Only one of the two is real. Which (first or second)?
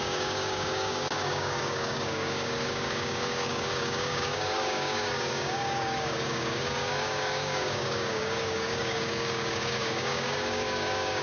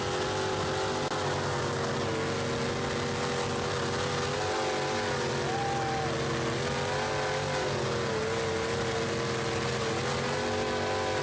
second